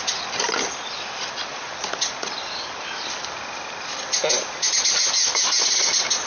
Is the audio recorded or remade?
recorded